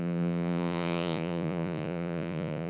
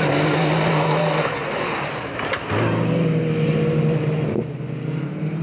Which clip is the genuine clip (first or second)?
second